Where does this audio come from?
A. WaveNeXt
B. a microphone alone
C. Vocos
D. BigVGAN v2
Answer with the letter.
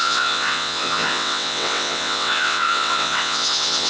A